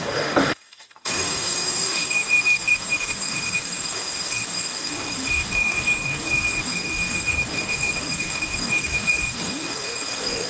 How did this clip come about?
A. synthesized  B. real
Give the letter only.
A